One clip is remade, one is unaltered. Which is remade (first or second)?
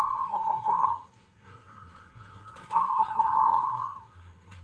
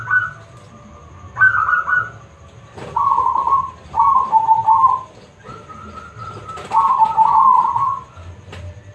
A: first